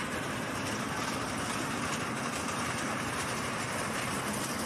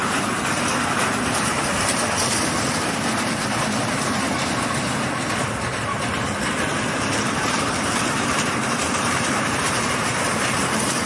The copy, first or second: second